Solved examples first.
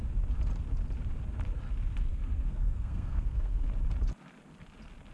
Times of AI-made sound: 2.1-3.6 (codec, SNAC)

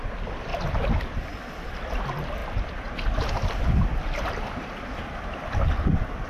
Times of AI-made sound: none

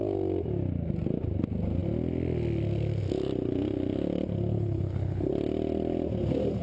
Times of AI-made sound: 4.5-5.3 (codec, HILCodec)

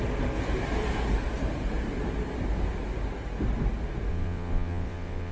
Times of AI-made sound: 4.1-5.3 (vocoder, WaveNeXt)

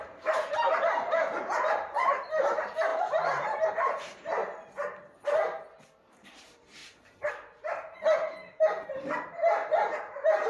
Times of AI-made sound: 0.0-4.4 (vocoder, BigVGAN v2); 6.0-10.5

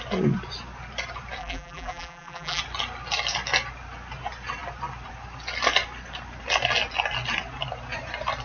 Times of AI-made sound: 1.4-2.6 (vocoder, BigVGAN v2)